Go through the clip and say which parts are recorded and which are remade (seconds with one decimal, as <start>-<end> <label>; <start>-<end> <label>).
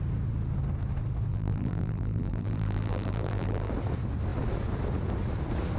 0.0-1.3 recorded; 1.3-3.7 remade; 3.7-5.8 recorded